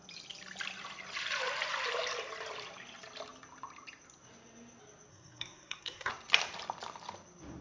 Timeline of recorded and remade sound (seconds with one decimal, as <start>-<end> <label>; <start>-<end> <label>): 0.0-5.1 recorded; 5.1-6.1 remade; 6.1-7.6 recorded